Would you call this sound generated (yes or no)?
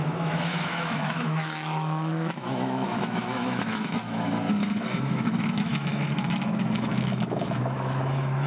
yes